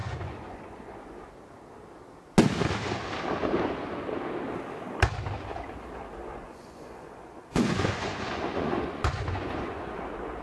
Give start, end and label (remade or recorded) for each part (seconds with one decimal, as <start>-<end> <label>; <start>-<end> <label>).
0.0-1.3 remade; 1.3-6.2 recorded; 6.2-10.0 remade; 10.0-10.4 recorded